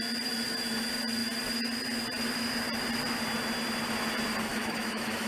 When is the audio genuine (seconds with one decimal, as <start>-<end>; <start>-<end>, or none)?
0.0-4.5